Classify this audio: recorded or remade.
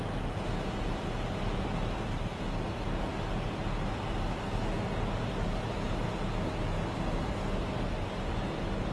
recorded